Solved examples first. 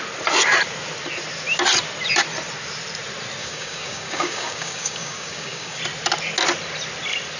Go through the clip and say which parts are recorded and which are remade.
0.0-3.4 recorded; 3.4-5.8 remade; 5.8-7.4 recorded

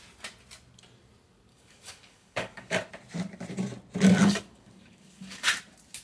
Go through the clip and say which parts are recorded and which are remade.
0.0-1.5 recorded; 1.5-2.9 remade; 2.9-4.2 recorded; 4.2-5.5 remade; 5.5-6.0 recorded

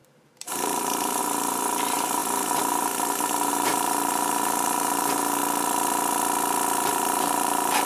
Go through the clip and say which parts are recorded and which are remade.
0.0-5.4 remade; 5.4-6.9 recorded; 6.9-7.8 remade

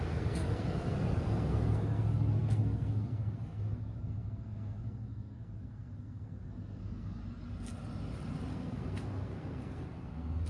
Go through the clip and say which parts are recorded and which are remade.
0.0-7.2 remade; 7.2-8.5 recorded; 8.5-10.5 remade

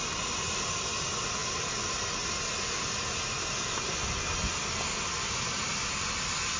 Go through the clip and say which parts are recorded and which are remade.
0.0-6.6 recorded

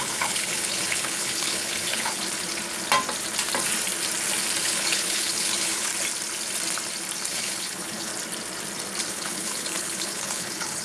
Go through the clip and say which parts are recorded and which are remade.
0.0-2.2 remade; 2.2-4.6 recorded; 4.6-5.9 remade; 5.9-7.3 recorded; 7.3-8.1 remade; 8.1-9.1 recorded; 9.1-10.8 remade

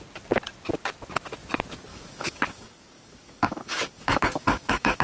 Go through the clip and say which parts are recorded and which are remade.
0.0-1.9 recorded; 1.9-5.0 remade

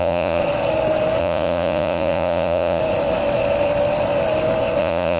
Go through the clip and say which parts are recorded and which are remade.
0.0-0.4 remade; 0.4-1.2 recorded; 1.2-2.8 remade; 2.8-4.8 recorded; 4.8-5.2 remade